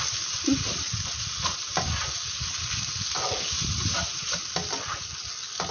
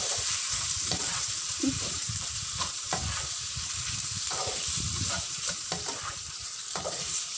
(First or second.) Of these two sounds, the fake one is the second